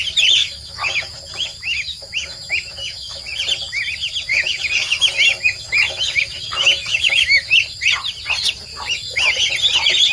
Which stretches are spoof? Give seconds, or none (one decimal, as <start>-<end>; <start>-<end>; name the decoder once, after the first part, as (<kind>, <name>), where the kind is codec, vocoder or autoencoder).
0.4-3.2 (autoencoder, DAC-VAE); 4.3-7.8; 8.7-9.3